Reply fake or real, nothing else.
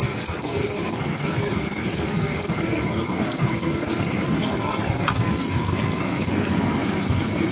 fake